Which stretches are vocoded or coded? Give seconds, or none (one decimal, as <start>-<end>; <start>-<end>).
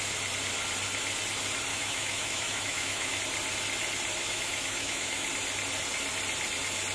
1.7-3.2; 4.2-5.3